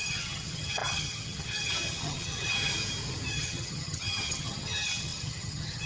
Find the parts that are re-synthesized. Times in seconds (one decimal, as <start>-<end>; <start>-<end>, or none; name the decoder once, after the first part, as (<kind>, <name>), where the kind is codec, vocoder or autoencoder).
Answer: 0.0-2.7 (vocoder, HiFi-GAN); 3.3-5.9